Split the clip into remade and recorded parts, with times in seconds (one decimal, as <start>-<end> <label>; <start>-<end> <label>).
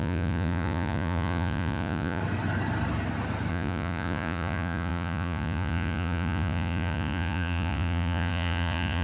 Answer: 0.0-2.2 remade; 2.2-3.5 recorded; 3.5-9.0 remade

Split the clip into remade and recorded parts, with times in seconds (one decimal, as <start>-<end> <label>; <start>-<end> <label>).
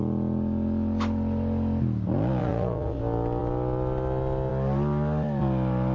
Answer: 0.0-2.4 recorded; 2.4-3.0 remade; 3.0-5.9 recorded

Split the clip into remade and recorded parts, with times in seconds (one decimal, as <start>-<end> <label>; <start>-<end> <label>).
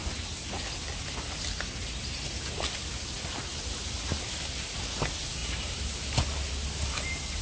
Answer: 0.0-7.4 recorded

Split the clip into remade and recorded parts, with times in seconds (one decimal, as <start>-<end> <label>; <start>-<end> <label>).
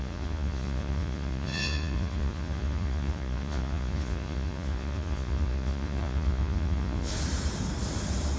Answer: 0.0-7.1 remade; 7.1-8.4 recorded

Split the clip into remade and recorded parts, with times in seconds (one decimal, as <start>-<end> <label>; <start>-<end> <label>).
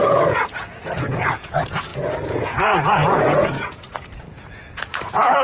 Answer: 0.0-1.9 remade; 1.9-2.4 recorded; 2.4-5.4 remade